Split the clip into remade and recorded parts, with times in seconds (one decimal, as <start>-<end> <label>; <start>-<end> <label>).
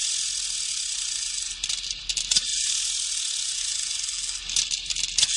0.0-5.4 recorded